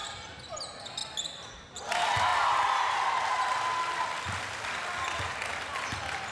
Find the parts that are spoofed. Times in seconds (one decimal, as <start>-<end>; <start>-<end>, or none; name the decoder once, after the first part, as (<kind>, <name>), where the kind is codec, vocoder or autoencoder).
none